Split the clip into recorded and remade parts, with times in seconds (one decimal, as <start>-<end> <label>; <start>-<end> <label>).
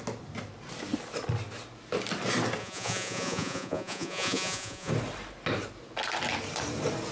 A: 0.0-2.6 recorded; 2.6-4.9 remade; 4.9-7.1 recorded